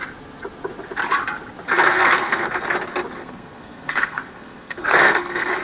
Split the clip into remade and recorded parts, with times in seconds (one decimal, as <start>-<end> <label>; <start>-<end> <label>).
0.0-1.9 recorded; 1.9-2.6 remade; 2.6-3.2 recorded; 3.2-5.6 remade